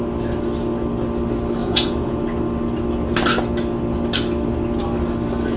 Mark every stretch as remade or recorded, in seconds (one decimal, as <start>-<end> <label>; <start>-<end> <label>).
0.0-1.6 recorded; 1.6-2.2 remade; 2.2-5.6 recorded